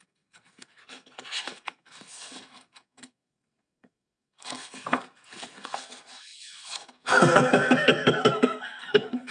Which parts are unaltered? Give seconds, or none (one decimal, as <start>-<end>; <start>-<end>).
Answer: none